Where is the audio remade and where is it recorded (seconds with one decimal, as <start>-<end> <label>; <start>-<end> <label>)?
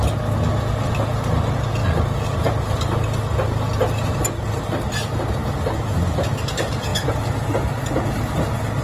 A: 0.0-8.8 recorded